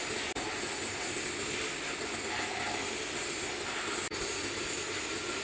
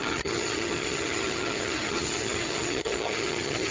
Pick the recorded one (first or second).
first